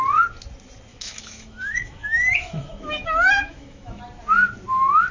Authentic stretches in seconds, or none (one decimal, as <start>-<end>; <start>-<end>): 0.0-0.9; 4.0-5.1